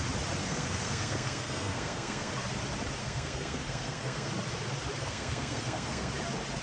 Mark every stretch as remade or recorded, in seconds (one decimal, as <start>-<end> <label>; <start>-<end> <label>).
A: 0.0-0.4 recorded; 0.4-2.3 remade; 2.3-3.0 recorded; 3.0-4.3 remade; 4.3-5.0 recorded; 5.0-6.1 remade; 6.1-6.6 recorded